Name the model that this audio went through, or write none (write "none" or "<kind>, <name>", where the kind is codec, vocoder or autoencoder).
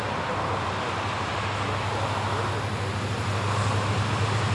none